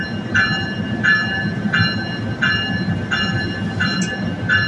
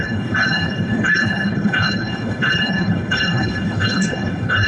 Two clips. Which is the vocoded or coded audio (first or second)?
second